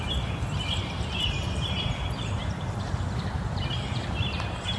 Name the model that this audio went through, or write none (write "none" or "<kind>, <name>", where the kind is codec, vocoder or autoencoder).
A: vocoder, BigVGAN v2